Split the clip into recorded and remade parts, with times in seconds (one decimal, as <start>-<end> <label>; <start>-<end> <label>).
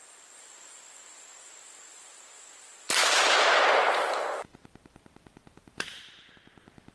0.0-3.0 recorded; 3.0-6.3 remade; 6.3-6.9 recorded